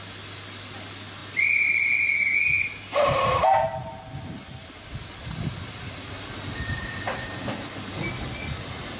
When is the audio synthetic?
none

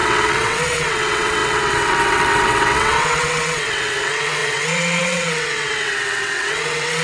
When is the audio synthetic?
0.0-7.0

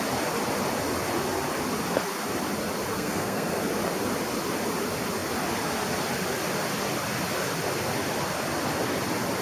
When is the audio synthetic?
2.9-3.6